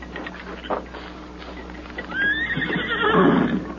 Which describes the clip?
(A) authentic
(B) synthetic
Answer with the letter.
A